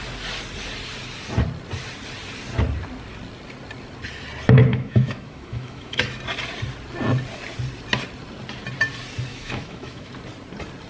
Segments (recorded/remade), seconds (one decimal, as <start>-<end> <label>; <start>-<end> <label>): 0.0-4.7 recorded; 4.7-6.2 remade; 6.2-9.3 recorded; 9.3-10.1 remade; 10.1-10.9 recorded

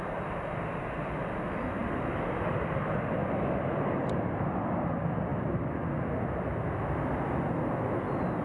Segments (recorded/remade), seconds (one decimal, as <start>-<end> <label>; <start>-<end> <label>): 0.0-8.4 recorded

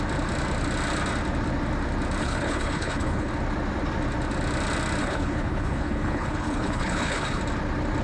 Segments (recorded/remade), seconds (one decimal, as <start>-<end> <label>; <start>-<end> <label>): 0.0-2.2 recorded; 2.2-3.3 remade; 3.3-5.0 recorded; 5.0-7.4 remade; 7.4-8.0 recorded

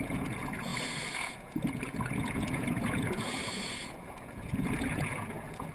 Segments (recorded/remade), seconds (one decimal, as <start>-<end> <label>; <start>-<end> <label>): 0.0-5.7 remade